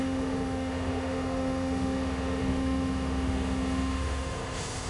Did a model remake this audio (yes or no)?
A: yes